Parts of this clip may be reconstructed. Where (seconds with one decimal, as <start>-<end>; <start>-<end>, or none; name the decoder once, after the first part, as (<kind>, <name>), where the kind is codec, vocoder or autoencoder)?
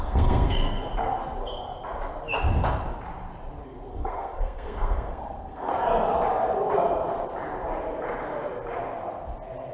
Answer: 0.0-0.9 (codec, SNAC); 3.9-5.7